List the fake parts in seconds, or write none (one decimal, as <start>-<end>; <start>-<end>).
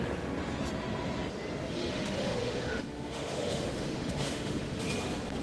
1.7-4.9